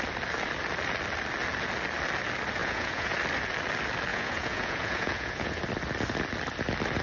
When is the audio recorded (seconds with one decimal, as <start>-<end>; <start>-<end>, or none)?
0.0-2.6; 3.1-4.1; 5.6-7.0